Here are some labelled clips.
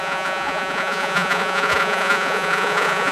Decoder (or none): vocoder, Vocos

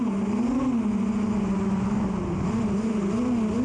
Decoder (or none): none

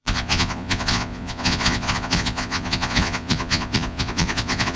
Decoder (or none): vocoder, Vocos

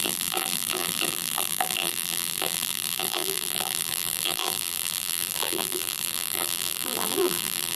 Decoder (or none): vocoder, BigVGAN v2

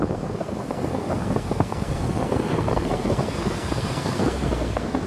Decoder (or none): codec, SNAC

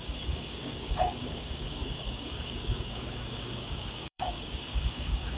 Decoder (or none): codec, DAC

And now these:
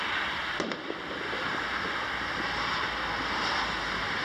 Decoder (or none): none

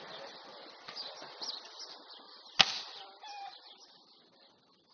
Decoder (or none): none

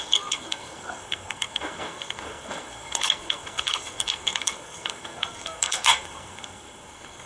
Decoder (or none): codec, SNAC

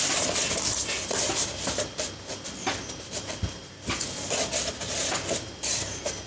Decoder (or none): none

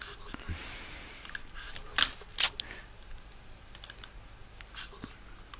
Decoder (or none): none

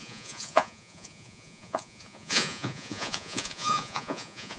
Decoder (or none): vocoder, Vocos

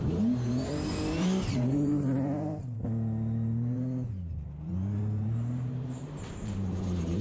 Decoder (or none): vocoder, BigVGAN v2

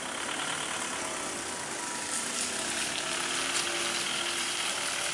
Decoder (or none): none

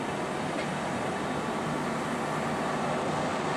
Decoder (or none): none